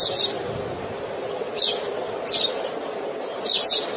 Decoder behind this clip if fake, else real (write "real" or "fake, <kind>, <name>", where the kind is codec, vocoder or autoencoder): real